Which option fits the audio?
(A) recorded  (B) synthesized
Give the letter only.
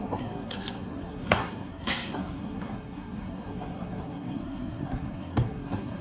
B